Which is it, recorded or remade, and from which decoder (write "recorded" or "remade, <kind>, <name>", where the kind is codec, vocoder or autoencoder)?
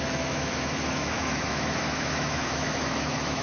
remade, autoencoder, DAC-VAE